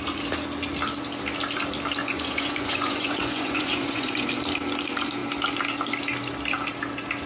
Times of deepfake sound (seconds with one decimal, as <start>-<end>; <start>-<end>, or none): 2.0-4.3